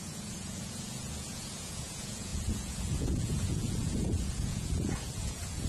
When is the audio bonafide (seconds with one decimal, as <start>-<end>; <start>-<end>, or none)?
none